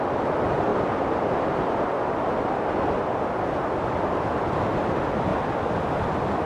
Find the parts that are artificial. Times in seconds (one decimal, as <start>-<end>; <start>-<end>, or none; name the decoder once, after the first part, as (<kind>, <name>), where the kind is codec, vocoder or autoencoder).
none